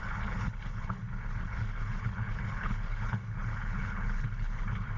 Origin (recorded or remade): remade